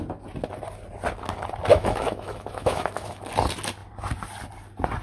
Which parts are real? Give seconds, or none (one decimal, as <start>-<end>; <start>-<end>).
0.0-1.7; 3.3-5.0